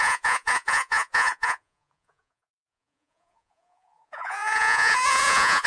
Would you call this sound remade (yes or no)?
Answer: yes